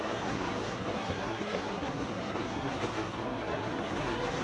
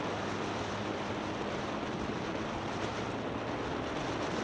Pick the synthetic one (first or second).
first